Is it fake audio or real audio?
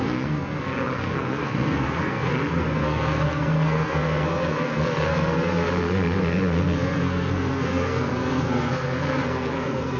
fake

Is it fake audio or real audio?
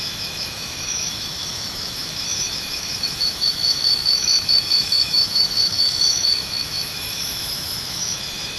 fake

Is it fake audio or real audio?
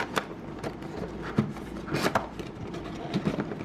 fake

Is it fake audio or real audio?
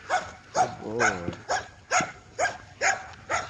real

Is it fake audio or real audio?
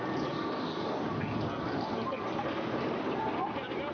real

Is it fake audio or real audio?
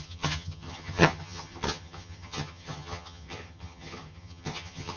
fake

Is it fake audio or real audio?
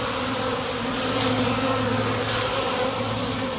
real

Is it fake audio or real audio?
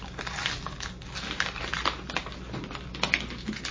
real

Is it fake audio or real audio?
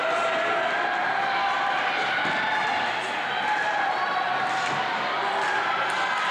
real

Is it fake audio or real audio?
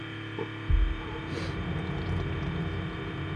real